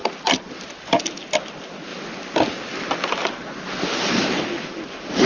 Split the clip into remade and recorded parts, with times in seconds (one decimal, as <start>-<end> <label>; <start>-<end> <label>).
0.0-5.3 recorded